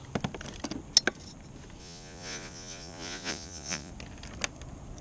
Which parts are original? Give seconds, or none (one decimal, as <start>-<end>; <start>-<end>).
0.0-1.8; 3.9-5.0

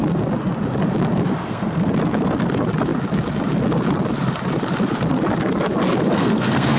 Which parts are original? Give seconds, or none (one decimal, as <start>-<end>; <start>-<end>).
0.0-1.4; 1.9-6.1